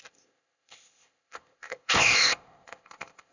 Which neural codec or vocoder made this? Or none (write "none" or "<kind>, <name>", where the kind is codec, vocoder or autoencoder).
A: codec, ZipCodec